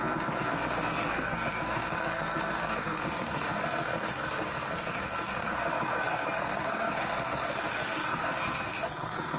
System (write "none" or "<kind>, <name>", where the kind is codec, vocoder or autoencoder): codec, SNAC